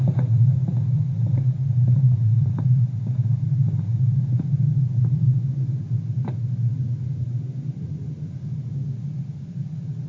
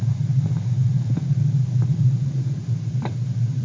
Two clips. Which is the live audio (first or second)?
first